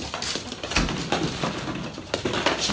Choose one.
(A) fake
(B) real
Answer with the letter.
B